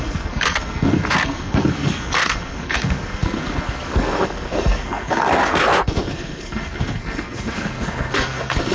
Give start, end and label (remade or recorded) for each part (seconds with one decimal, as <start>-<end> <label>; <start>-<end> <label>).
0.0-8.7 remade